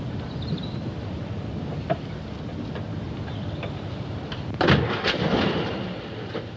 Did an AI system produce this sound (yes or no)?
yes